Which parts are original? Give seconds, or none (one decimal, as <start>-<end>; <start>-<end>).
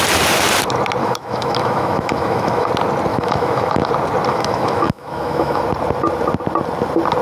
0.0-1.0; 2.7-3.1; 3.9-4.3; 5.6-7.2